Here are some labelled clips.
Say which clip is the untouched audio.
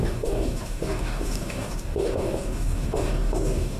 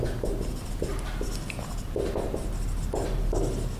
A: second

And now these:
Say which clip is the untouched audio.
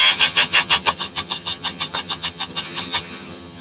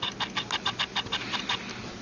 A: second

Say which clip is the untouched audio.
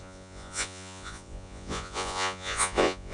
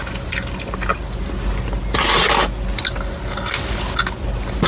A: second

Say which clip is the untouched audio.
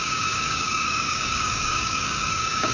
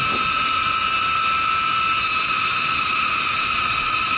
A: second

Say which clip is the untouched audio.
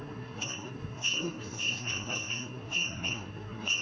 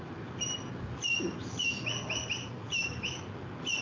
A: second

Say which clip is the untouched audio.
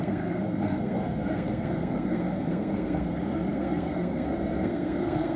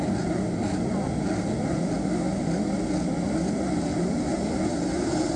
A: second